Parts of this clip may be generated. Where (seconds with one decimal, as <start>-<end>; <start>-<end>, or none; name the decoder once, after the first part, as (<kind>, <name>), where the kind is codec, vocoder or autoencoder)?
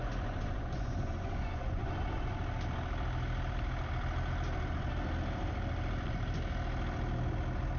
0.0-2.4 (vocoder, Vocos)